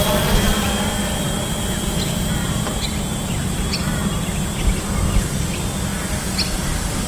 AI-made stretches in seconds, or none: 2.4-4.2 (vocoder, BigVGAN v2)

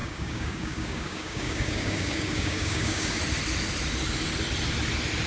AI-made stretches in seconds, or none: 0.0-3.2 (codec, DAC)

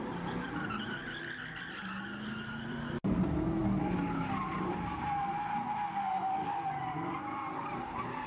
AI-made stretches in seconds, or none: none